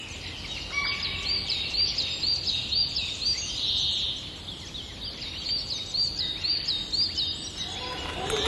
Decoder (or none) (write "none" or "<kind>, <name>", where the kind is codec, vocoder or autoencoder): none